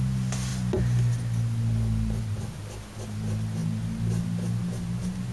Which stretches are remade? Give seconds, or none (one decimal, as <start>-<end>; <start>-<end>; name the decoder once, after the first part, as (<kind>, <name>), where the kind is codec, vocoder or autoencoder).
none